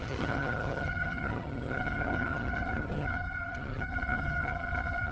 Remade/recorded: remade